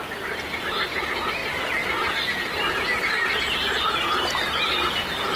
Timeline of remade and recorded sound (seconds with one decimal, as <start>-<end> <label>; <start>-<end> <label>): 0.0-5.4 recorded